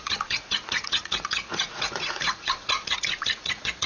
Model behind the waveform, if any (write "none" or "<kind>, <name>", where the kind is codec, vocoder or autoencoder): vocoder, Vocos